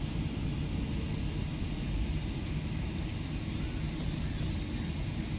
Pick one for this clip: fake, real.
real